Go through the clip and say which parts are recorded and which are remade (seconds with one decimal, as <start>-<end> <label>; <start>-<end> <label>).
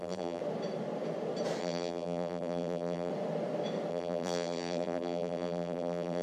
0.0-0.4 remade; 0.4-1.6 recorded; 1.6-3.1 remade; 3.1-3.9 recorded; 3.9-6.2 remade